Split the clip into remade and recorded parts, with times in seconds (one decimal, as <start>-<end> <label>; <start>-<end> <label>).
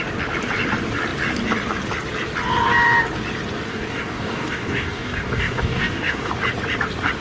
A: 0.0-3.7 recorded; 3.7-6.3 remade; 6.3-7.2 recorded